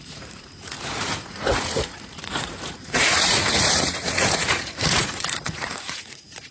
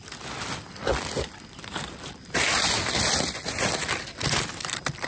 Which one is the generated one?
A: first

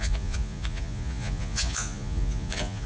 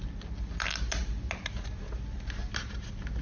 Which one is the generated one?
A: first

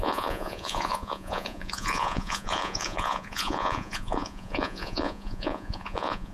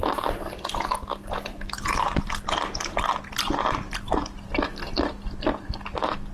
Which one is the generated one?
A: first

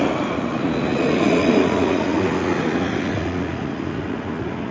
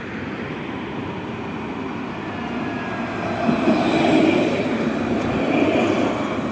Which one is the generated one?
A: first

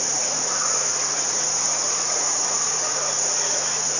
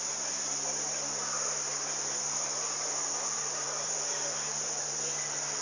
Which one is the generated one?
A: first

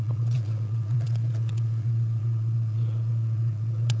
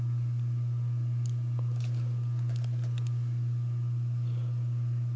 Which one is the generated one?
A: first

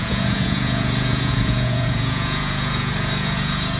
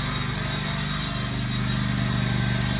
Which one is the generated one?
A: first